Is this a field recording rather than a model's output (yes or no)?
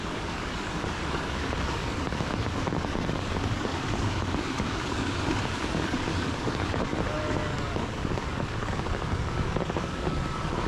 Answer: no